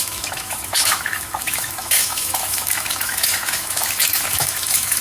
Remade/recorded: remade